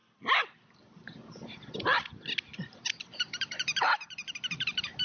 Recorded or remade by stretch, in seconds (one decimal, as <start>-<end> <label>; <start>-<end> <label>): 0.0-3.0 recorded; 3.0-5.0 remade